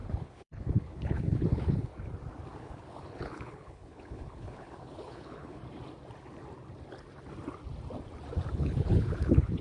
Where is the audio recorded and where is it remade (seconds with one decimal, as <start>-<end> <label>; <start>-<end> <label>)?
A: 0.0-1.9 remade; 1.9-2.6 recorded; 2.6-5.6 remade; 5.6-8.5 recorded; 8.5-9.6 remade